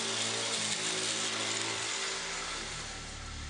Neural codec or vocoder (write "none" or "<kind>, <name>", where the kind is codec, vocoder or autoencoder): none